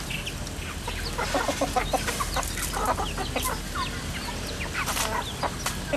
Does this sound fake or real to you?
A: real